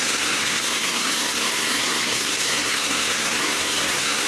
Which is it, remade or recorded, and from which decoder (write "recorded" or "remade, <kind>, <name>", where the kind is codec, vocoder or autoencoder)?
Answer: remade, codec, SNAC